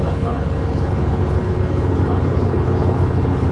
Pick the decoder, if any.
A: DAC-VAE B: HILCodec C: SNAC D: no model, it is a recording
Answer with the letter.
B